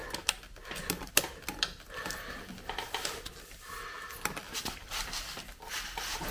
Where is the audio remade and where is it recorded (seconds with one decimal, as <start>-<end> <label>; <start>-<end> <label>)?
0.0-6.3 recorded

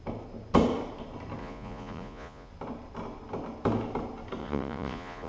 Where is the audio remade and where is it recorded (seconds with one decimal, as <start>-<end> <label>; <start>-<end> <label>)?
0.0-1.4 recorded; 1.4-2.5 remade; 2.5-4.4 recorded; 4.4-5.3 remade

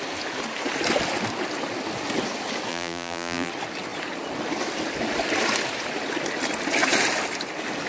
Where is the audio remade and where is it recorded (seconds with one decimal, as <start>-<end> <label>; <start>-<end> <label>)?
0.0-2.7 recorded; 2.7-3.5 remade; 3.5-7.9 recorded

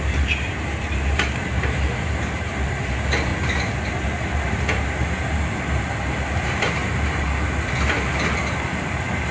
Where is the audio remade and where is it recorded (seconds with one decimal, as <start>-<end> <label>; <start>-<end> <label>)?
0.0-3.3 remade; 3.3-4.2 recorded; 4.2-6.8 remade; 6.8-9.3 recorded

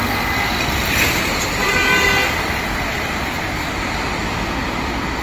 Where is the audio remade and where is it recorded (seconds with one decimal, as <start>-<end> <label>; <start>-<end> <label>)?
0.0-0.5 recorded; 0.5-3.6 remade; 3.6-4.6 recorded; 4.6-5.2 remade

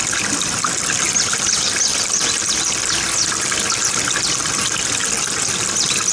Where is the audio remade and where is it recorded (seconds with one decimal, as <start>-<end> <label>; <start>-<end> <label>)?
0.0-6.1 recorded

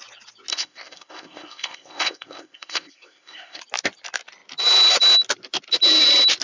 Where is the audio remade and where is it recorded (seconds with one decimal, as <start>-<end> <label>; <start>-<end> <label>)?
0.0-0.5 recorded; 0.5-3.6 remade; 3.6-6.4 recorded